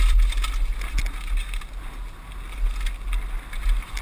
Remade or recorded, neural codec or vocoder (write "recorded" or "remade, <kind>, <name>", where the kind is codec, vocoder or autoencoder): recorded